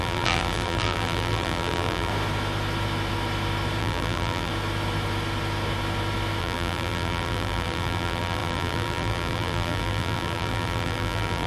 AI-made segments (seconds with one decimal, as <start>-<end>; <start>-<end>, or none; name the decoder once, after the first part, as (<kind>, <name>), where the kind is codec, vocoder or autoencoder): 0.0-2.1 (vocoder, BigVGAN v2); 3.8-4.5; 6.4-11.5